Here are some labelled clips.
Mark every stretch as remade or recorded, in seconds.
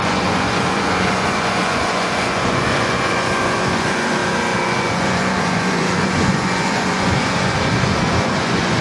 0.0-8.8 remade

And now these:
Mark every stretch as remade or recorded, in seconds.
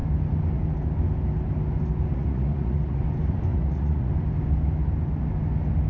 0.0-2.1 recorded; 2.1-3.0 remade; 3.0-3.5 recorded; 3.5-4.1 remade; 4.1-5.9 recorded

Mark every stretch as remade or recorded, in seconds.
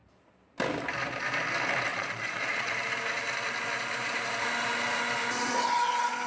0.0-1.9 recorded; 1.9-2.7 remade; 2.7-6.3 recorded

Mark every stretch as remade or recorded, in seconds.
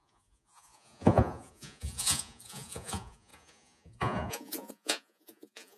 0.0-5.8 remade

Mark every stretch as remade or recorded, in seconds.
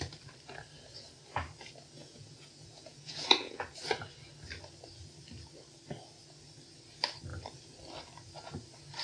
0.0-2.0 recorded; 2.0-3.7 remade; 3.7-9.0 recorded